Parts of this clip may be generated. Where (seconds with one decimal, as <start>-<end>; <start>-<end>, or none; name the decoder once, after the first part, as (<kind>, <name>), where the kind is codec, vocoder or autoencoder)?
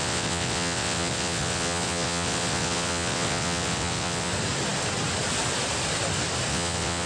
0.0-4.3 (vocoder, WaveNeXt); 6.5-7.1